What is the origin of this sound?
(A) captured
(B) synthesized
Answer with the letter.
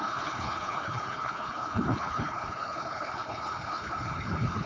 B